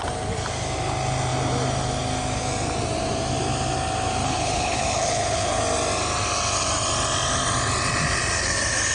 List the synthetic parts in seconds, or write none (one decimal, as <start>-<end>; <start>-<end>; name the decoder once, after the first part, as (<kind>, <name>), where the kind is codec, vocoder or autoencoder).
4.2-5.6 (codec, HILCodec)